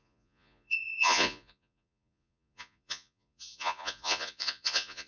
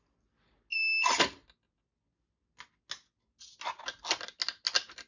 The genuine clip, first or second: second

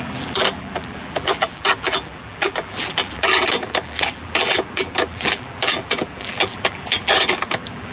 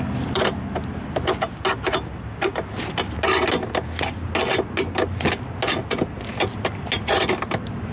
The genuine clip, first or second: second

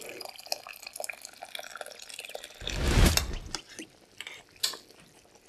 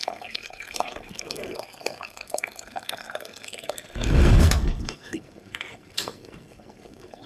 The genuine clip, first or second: first